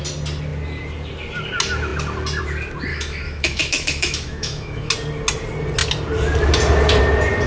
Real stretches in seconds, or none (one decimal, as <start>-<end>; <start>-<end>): 0.0-2.9; 4.9-7.5